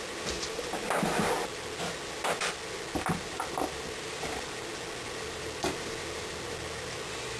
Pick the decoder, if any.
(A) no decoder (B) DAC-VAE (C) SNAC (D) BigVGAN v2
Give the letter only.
A